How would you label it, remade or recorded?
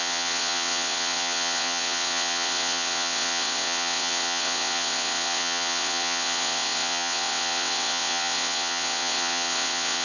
remade